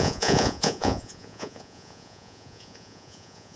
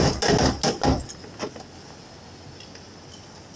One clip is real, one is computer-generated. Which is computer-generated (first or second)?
first